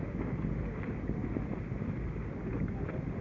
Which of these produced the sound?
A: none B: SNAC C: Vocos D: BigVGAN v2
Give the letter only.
A